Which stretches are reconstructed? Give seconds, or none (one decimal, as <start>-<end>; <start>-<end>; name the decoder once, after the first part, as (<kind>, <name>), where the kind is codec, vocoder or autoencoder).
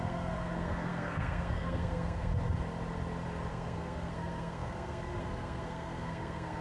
0.0-2.3 (codec, SNAC); 3.5-6.6